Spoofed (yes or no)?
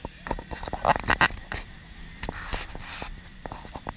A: no